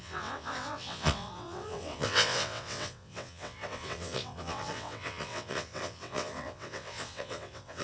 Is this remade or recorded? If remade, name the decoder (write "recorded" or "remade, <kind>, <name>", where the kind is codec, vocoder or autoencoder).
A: remade, vocoder, WaveNeXt